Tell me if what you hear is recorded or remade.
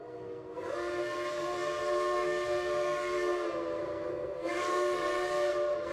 remade